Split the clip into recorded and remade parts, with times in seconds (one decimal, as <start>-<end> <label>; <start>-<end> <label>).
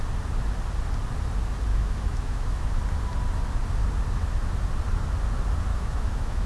0.0-1.7 recorded; 1.7-2.8 remade; 2.8-5.7 recorded; 5.7-6.5 remade